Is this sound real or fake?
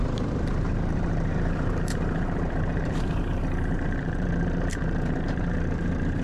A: fake